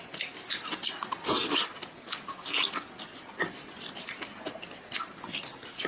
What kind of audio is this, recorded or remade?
recorded